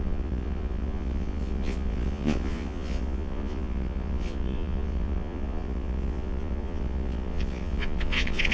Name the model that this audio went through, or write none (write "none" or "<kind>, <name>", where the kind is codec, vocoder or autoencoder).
vocoder, Vocos